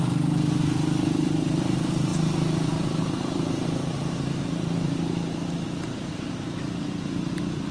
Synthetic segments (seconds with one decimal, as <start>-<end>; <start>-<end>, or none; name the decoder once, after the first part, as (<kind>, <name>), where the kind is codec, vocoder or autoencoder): none